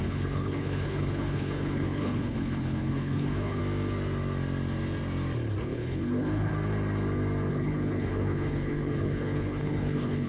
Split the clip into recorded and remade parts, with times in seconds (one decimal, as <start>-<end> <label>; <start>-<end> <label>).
0.0-3.6 remade; 3.6-5.6 recorded; 5.6-6.5 remade; 6.5-7.5 recorded; 7.5-10.3 remade